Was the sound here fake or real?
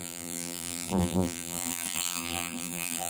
fake